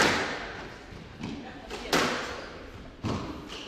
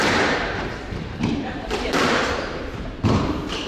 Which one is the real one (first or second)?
first